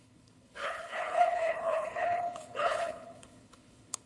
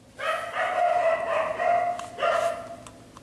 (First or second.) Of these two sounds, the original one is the second